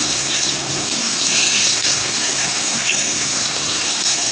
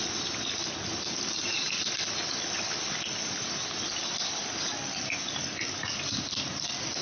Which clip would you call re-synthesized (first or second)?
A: first